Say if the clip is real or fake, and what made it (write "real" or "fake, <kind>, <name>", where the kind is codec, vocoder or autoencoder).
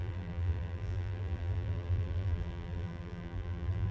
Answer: fake, vocoder, BigVGAN v2